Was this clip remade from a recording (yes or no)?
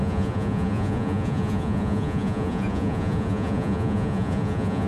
yes